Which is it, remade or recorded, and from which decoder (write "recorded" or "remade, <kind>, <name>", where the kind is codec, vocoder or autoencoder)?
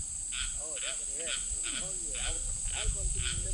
recorded